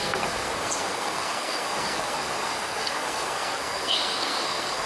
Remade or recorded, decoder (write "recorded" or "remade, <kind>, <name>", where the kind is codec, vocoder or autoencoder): remade, codec, SNAC